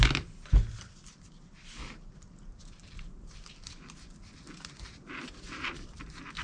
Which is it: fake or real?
real